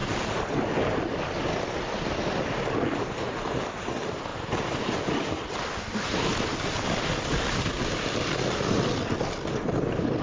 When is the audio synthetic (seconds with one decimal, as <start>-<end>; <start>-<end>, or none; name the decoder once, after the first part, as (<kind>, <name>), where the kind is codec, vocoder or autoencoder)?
none